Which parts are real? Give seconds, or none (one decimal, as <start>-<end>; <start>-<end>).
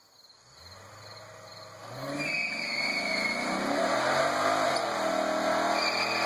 0.0-6.3